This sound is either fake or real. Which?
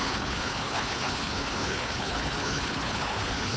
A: fake